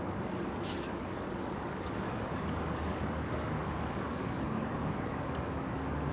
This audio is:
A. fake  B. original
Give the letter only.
A